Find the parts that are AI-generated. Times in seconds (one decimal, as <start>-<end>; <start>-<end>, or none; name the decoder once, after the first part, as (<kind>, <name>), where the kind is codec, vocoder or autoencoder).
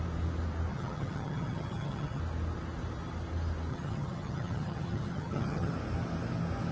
0.7-2.2 (vocoder, HiFi-GAN); 3.7-5.7